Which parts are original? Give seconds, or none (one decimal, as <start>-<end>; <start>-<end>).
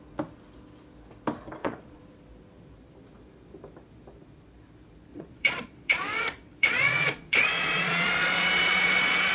0.0-1.6; 2.2-5.1